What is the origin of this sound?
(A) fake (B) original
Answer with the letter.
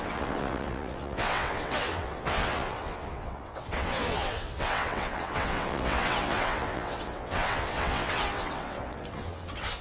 A